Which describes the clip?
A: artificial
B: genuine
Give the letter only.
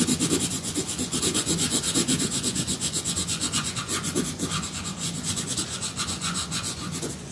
A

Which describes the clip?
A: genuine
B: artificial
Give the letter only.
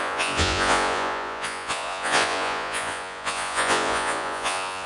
B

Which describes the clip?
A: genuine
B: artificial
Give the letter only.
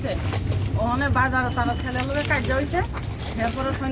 A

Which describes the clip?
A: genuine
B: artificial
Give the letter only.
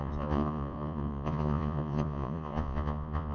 B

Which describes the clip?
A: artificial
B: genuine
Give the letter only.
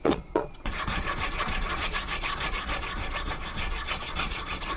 A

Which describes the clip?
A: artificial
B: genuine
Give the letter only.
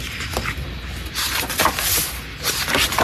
B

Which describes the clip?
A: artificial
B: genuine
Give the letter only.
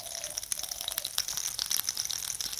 B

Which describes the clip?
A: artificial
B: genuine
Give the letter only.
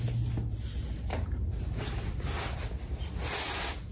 B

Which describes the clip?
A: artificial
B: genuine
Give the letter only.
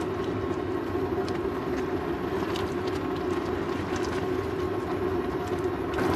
B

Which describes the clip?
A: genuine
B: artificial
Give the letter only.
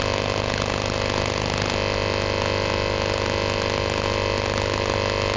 A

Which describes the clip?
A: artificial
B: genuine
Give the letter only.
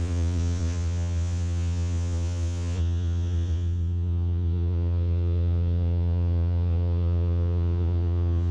A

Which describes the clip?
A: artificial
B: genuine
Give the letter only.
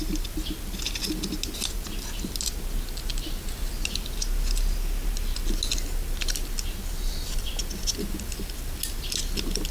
B